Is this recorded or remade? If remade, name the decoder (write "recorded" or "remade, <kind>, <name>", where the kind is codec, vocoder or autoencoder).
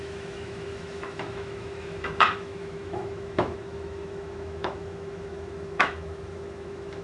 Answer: remade, autoencoder, DAC-VAE